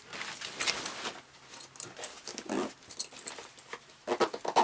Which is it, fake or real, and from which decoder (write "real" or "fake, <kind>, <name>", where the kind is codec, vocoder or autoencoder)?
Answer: real